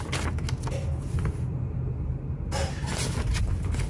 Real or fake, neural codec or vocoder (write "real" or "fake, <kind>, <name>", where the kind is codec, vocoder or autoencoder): real